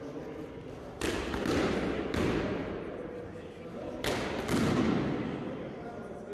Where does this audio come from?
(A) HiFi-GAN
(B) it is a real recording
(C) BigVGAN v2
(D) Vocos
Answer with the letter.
B